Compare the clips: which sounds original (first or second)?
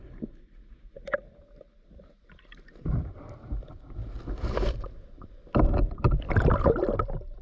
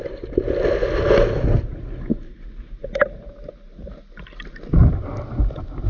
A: second